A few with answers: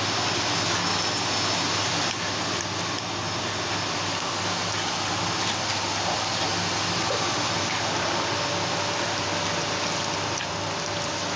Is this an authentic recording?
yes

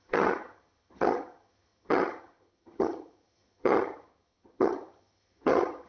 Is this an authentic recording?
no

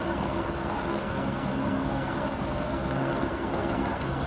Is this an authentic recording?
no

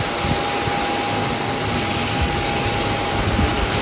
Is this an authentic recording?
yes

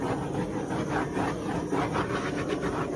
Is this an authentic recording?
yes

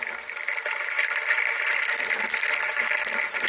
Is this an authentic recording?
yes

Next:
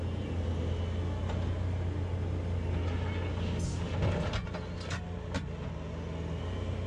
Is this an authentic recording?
yes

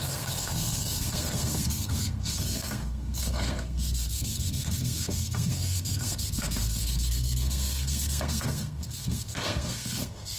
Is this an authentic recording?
no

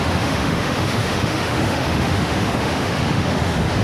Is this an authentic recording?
no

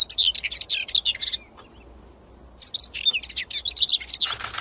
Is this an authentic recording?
yes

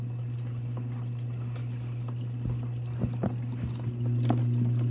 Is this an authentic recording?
yes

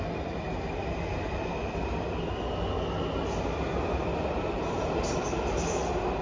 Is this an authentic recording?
yes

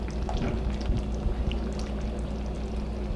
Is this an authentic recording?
yes